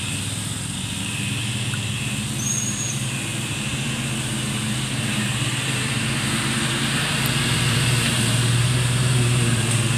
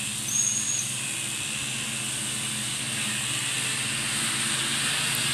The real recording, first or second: second